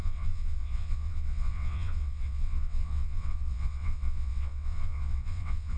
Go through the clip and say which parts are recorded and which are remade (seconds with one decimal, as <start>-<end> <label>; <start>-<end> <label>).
0.0-5.8 remade